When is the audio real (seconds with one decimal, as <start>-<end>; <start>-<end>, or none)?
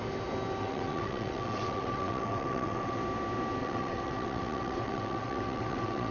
0.0-0.6; 3.0-3.6